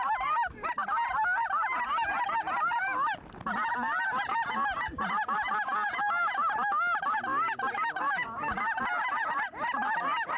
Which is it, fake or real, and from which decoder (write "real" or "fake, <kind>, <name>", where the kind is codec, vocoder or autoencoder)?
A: real